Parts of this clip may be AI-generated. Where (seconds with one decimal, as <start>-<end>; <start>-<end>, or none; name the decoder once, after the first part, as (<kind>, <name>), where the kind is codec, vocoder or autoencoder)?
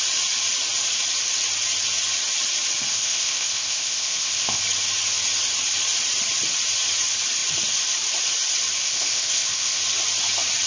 2.9-4.6 (codec, ZipCodec); 8.8-9.8